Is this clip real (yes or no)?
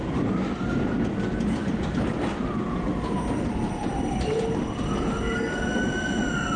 yes